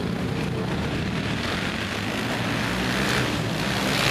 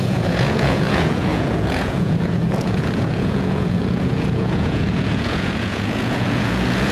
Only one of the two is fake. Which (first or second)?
second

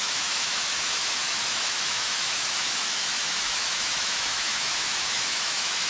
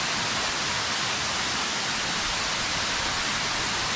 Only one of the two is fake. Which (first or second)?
first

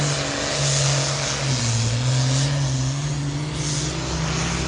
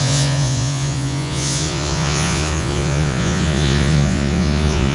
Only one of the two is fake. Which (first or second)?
second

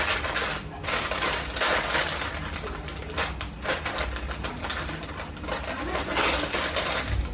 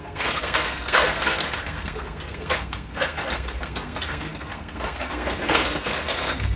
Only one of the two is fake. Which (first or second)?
second